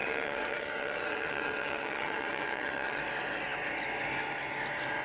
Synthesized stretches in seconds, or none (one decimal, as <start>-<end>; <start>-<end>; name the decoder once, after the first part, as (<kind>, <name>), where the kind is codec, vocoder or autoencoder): 0.0-3.0 (vocoder, WaveNeXt)